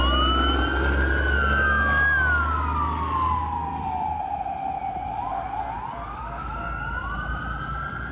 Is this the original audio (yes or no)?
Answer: yes